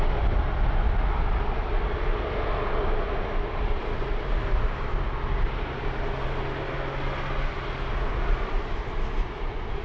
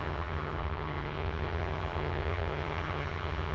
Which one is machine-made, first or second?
second